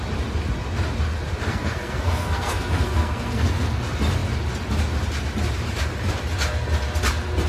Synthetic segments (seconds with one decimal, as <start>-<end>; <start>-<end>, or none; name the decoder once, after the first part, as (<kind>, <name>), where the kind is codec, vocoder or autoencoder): 1.5-3.8 (codec, SNAC)